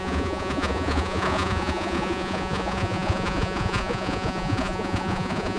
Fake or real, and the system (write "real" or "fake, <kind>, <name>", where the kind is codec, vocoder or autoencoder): fake, vocoder, Vocos